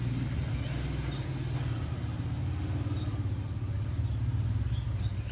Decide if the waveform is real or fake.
real